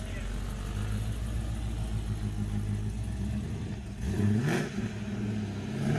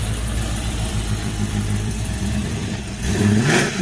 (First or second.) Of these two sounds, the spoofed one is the second